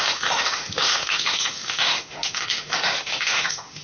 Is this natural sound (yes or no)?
no